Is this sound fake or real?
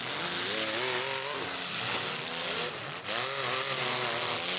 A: real